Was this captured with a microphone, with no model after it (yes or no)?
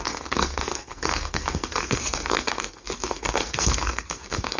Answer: no